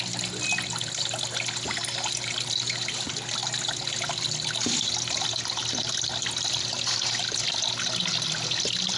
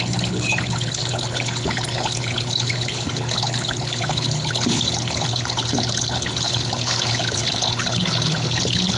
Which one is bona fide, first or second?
first